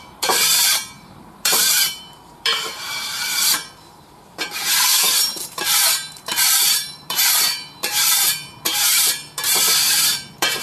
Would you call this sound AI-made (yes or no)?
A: yes